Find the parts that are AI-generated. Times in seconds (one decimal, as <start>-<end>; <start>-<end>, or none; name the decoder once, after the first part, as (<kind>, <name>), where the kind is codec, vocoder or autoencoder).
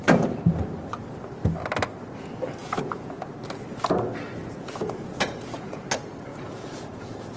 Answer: 2.6-3.3 (vocoder, Vocos); 4.4-5.8; 6.3-7.4